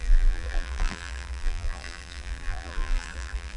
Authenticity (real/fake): fake